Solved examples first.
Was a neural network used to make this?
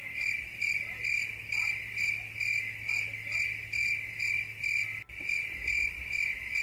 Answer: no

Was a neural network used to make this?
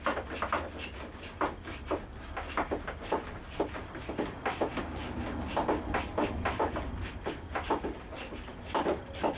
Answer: no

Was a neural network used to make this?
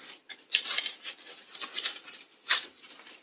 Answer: no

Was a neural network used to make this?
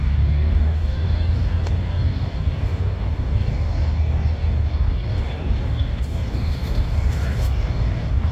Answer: yes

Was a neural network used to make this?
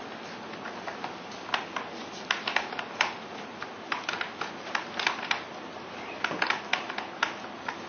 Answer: no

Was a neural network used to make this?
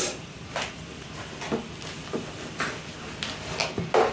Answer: no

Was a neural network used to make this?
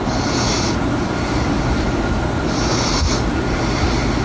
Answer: no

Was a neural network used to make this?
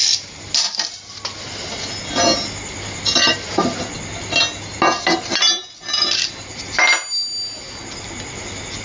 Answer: no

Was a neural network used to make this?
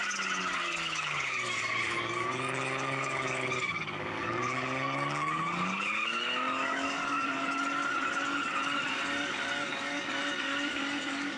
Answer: yes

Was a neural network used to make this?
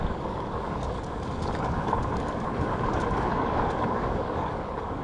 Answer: yes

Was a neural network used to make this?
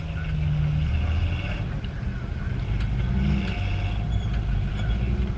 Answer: no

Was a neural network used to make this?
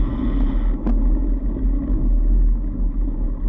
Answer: no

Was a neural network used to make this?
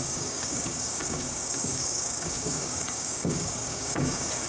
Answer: yes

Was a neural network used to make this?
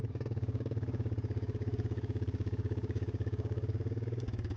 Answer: yes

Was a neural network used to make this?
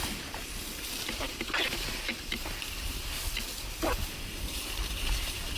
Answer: no